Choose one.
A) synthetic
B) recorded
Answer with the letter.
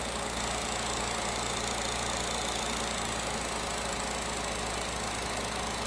B